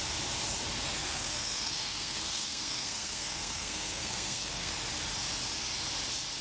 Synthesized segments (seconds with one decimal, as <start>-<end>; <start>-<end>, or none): 1.0-4.7